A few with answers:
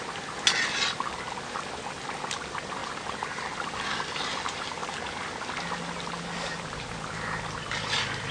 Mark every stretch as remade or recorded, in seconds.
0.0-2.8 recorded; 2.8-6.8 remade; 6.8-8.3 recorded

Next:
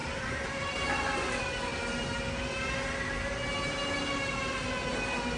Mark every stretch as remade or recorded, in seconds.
0.0-0.9 remade; 0.9-5.4 recorded

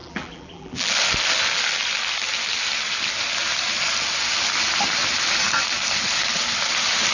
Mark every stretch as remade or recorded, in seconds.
0.0-0.9 remade; 0.9-7.1 recorded

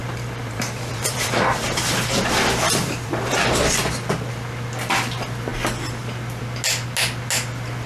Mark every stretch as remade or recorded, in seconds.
0.0-3.6 remade; 3.6-7.9 recorded

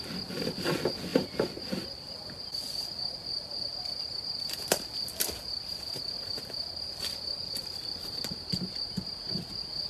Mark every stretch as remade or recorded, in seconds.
0.0-9.9 recorded

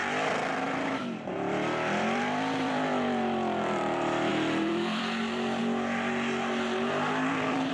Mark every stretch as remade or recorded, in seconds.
0.0-5.6 remade; 5.6-7.3 recorded; 7.3-7.7 remade

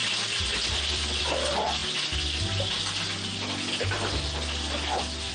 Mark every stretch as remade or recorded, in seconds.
0.0-1.2 remade; 1.2-5.3 recorded